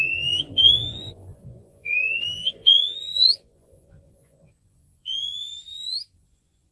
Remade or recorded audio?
remade